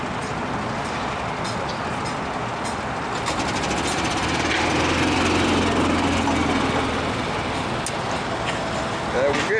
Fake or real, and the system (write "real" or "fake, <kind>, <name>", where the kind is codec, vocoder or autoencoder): real